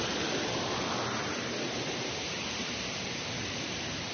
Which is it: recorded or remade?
recorded